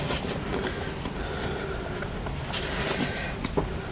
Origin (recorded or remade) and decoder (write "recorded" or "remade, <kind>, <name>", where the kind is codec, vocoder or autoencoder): recorded